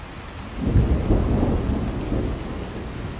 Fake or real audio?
real